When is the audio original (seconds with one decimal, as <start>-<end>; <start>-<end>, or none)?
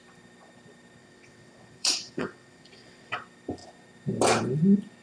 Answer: 0.0-1.0; 3.2-5.0